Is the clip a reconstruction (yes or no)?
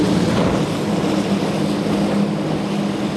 no